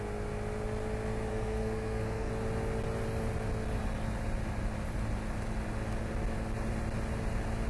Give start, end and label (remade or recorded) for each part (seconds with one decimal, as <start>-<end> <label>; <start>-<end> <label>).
0.0-1.3 recorded; 1.3-2.3 remade; 2.3-7.7 recorded